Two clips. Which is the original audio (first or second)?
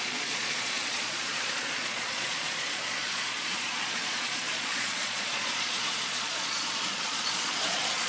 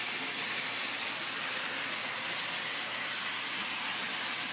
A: second